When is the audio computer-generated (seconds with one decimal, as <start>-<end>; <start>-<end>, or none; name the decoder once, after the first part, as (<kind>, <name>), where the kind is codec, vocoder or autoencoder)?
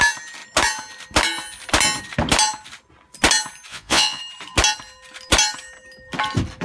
3.7-4.2 (vocoder, Vocos)